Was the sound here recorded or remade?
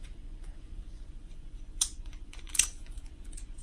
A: remade